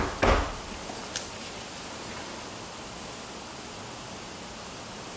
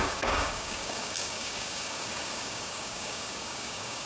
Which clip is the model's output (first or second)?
second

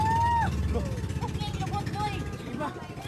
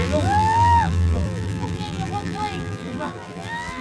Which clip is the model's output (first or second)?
second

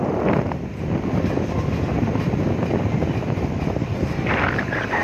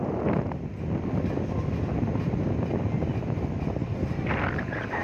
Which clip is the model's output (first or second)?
first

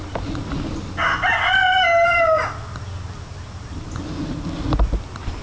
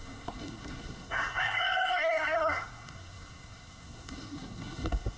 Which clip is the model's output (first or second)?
second